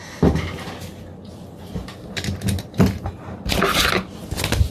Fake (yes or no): no